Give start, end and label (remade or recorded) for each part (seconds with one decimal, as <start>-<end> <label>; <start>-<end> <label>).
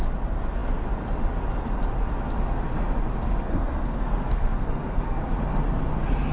0.0-3.5 recorded; 3.5-5.2 remade; 5.2-6.3 recorded